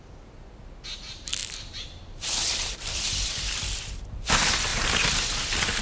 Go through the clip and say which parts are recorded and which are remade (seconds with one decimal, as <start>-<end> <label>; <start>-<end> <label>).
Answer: 0.0-1.4 recorded; 1.4-4.3 remade; 4.3-4.7 recorded; 4.7-5.8 remade